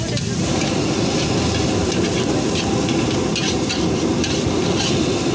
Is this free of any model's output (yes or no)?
yes